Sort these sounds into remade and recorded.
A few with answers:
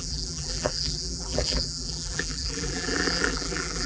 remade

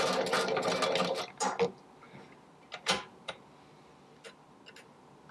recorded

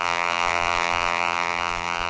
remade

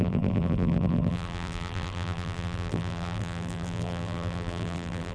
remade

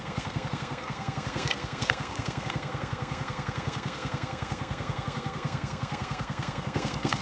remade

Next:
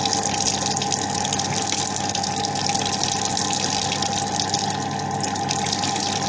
recorded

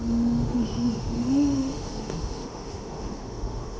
remade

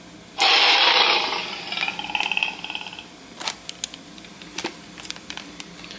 recorded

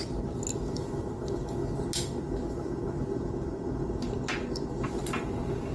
recorded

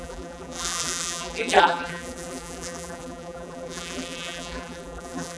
remade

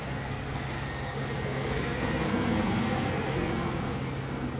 remade